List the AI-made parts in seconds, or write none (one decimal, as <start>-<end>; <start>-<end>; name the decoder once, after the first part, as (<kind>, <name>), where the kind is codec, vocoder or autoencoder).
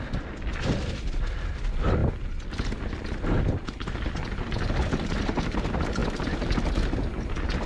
none